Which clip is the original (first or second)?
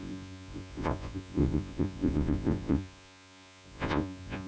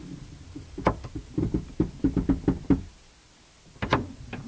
second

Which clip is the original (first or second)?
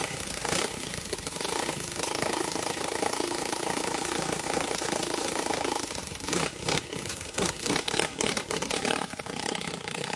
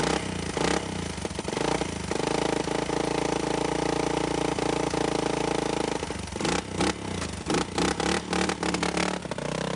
second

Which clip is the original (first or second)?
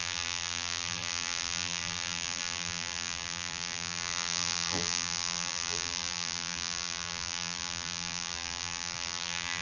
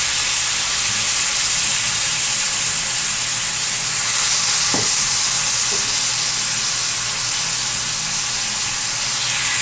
second